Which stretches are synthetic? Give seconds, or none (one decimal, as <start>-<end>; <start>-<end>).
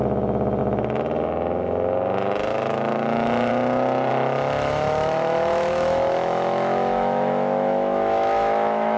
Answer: 2.5-3.5; 4.1-9.0